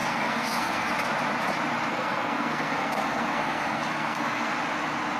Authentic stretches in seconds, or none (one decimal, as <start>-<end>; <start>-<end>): 0.9-1.9; 4.5-5.2